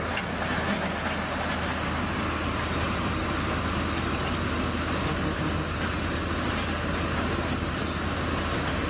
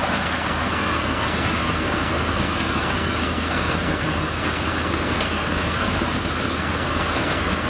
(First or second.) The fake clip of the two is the second